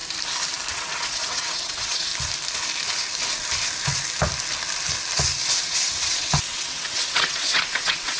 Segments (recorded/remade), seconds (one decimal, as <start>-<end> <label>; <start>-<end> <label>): 0.0-0.7 recorded; 0.7-2.1 remade; 2.1-5.6 recorded; 5.6-8.2 remade